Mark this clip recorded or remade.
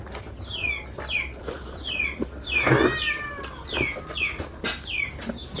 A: recorded